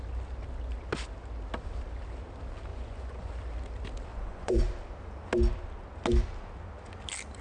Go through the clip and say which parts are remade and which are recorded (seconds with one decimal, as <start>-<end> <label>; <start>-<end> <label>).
0.0-2.7 recorded; 2.7-3.3 remade; 3.3-4.1 recorded; 4.1-4.6 remade; 4.6-7.4 recorded